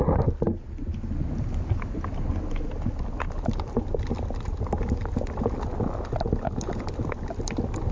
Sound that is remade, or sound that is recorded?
recorded